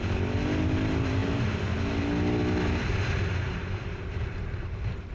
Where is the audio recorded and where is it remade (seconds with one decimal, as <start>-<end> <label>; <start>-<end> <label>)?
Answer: 0.0-5.1 recorded